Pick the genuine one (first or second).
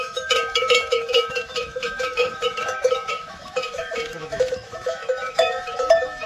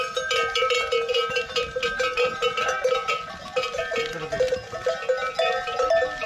second